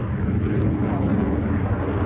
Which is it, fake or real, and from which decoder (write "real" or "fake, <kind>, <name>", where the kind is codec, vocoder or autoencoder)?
real